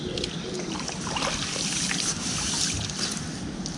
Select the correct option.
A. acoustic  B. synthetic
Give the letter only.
A